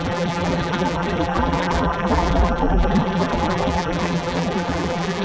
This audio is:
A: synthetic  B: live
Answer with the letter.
A